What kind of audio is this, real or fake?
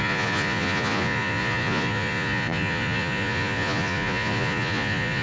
fake